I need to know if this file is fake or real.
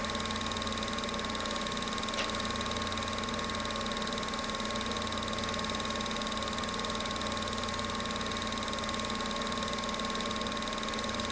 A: real